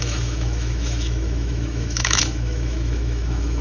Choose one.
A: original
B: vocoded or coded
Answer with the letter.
B